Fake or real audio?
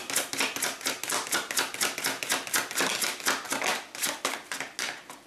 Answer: real